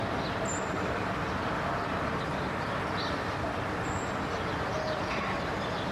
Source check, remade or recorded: recorded